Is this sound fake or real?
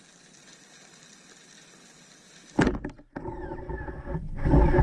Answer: real